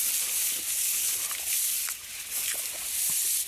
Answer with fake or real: real